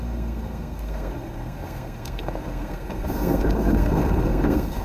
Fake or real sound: fake